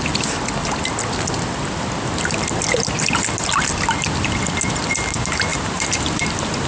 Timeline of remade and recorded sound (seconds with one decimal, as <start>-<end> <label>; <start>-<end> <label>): 0.0-5.5 recorded; 5.5-6.7 remade